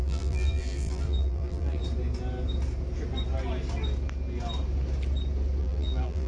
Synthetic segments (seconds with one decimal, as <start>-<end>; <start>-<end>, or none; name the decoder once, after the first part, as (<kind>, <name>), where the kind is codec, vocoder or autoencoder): 0.0-1.8 (vocoder, BigVGAN v2); 5.6-6.3